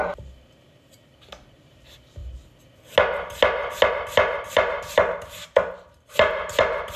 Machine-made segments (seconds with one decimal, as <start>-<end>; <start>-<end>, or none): 0.0-2.2; 3.9-7.0